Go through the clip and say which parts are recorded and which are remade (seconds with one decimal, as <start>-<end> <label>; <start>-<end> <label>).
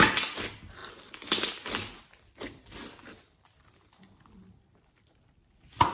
0.0-5.9 recorded